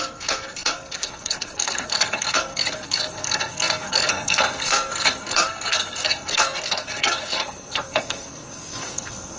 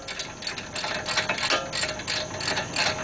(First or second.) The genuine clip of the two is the second